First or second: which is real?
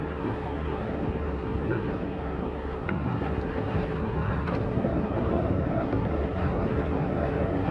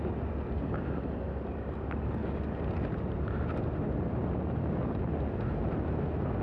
second